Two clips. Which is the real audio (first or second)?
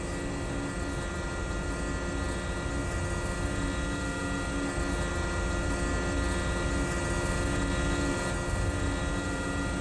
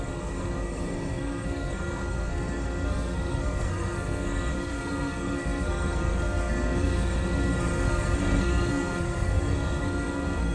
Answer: first